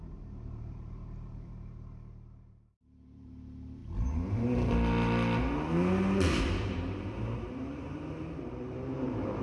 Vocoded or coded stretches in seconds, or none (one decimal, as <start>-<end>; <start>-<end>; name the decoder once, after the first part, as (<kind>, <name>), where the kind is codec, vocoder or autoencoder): 0.0-3.8 (vocoder, BigVGAN v2); 6.4-9.4